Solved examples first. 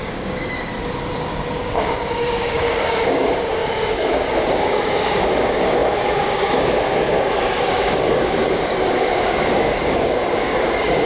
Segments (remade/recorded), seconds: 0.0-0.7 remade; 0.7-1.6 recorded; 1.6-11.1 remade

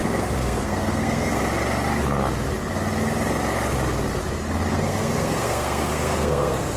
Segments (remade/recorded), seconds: 0.0-1.4 remade; 1.4-4.7 recorded; 4.7-6.8 remade

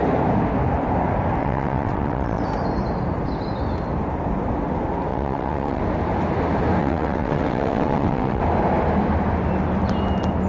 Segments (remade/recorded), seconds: 0.0-1.4 recorded; 1.4-2.4 remade; 2.4-5.1 recorded; 5.1-5.8 remade; 5.8-6.8 recorded; 6.8-8.4 remade; 8.4-10.5 recorded